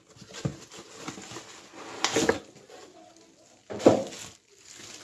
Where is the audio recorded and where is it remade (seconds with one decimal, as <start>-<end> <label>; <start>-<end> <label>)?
0.0-5.0 recorded